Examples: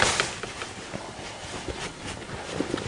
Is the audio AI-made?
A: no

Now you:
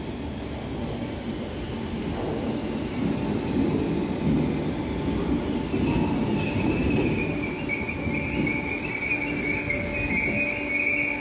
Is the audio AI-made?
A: no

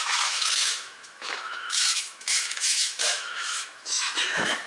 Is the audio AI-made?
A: yes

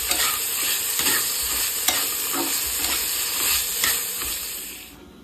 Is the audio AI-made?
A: no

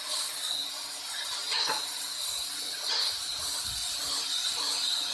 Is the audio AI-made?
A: no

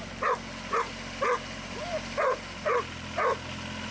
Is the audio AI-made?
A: no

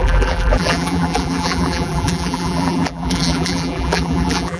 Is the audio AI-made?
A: yes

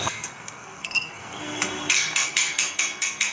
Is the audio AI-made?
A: yes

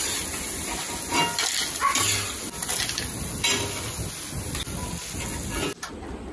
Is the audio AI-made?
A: no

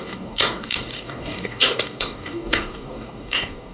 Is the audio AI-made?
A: yes